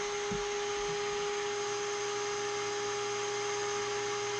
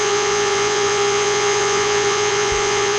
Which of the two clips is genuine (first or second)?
first